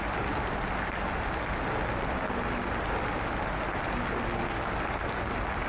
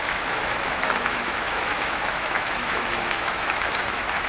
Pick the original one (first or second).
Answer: first